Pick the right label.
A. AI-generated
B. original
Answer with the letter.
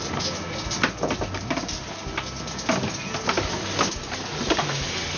B